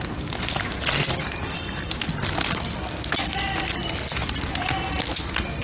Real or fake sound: real